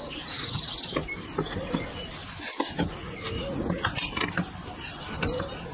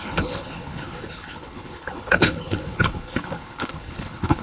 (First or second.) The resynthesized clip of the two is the second